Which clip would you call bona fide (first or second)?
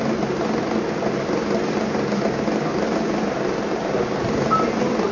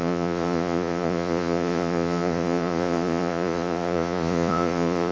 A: first